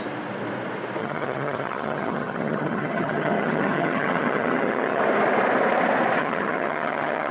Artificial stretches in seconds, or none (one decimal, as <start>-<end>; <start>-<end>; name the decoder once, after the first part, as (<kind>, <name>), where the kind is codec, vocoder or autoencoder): 1.0-5.0 (vocoder, HiFi-GAN); 6.2-7.3